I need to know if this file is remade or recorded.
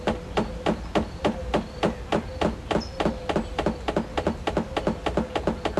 recorded